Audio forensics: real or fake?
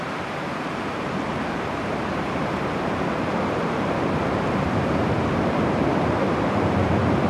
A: fake